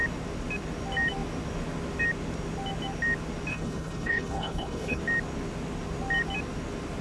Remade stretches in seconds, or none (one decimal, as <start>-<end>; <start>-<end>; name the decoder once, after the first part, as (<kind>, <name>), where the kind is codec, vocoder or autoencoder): 3.5-5.0 (codec, HILCodec)